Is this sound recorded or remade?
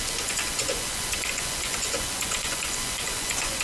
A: remade